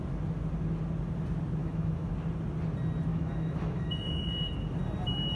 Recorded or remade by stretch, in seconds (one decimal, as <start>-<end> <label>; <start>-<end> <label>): 0.0-1.6 recorded; 1.6-2.1 remade; 2.1-3.1 recorded; 3.1-4.5 remade; 4.5-5.4 recorded